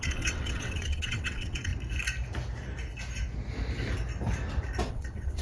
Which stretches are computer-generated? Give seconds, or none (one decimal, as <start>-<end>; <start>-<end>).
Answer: 0.0-1.7; 4.9-5.4